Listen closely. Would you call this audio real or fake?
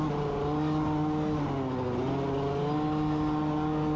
real